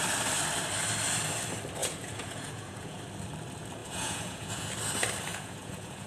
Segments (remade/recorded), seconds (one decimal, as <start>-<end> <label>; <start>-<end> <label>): 0.0-1.8 recorded; 1.8-3.0 remade; 3.0-3.8 recorded; 3.8-4.7 remade; 4.7-5.3 recorded; 5.3-6.1 remade